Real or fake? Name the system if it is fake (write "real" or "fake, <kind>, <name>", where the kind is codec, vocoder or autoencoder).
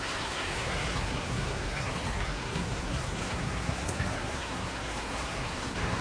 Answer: fake, codec, SNAC